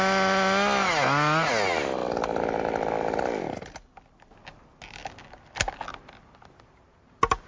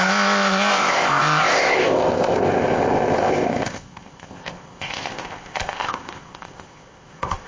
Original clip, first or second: first